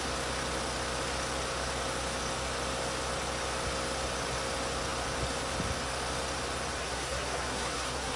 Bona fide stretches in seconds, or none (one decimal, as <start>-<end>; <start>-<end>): 0.0-6.8